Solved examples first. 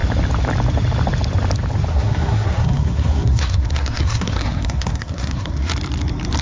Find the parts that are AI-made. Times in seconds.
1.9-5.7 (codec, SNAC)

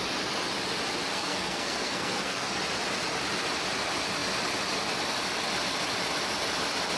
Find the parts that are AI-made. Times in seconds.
1.1-2.6 (codec, SNAC)

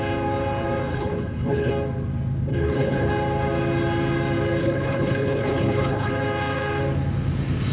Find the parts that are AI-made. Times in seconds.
0.9-1.7 (codec, HILCodec); 2.5-3.1; 4.6-6.1

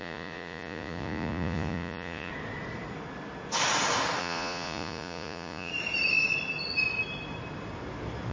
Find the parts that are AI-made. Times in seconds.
0.0-2.3 (vocoder, Vocos); 4.2-5.7